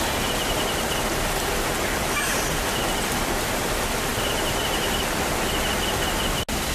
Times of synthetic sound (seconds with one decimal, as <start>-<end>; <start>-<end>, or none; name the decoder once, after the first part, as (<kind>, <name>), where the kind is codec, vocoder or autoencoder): 4.1-4.7 (vocoder, BigVGAN v2)